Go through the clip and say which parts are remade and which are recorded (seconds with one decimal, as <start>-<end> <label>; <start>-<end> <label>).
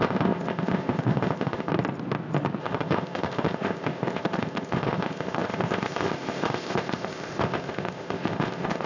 0.0-1.7 remade; 1.7-2.6 recorded; 2.6-8.9 remade